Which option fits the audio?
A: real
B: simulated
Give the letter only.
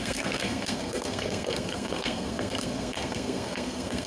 B